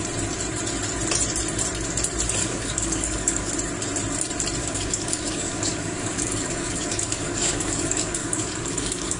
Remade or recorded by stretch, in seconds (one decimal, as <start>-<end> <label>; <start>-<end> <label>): 0.0-2.4 recorded; 2.4-3.5 remade; 3.5-4.6 recorded; 4.6-9.2 remade